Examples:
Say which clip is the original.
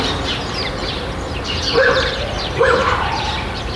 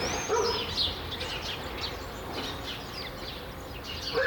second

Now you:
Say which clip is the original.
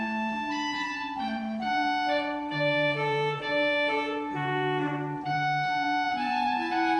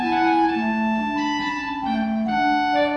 second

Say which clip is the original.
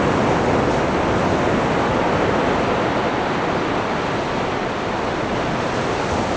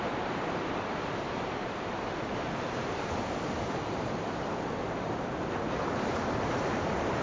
first